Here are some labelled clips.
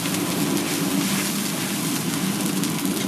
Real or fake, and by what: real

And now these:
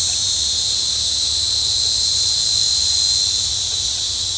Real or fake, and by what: real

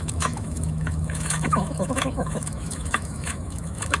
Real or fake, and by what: fake, autoencoder, DAC-VAE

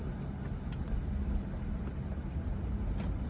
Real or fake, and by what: real